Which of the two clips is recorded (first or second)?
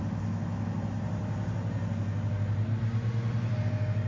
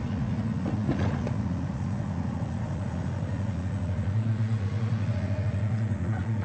first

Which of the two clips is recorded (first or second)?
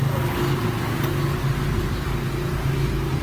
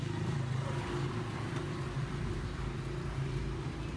first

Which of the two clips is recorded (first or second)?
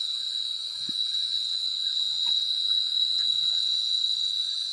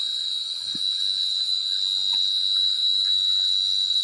second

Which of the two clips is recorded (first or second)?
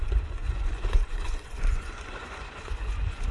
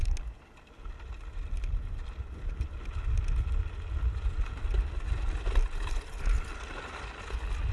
second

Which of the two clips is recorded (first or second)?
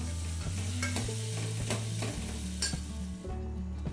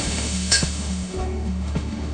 first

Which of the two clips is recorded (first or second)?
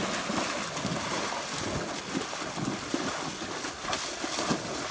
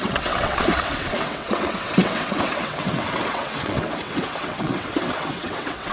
first